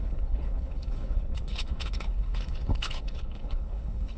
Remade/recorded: remade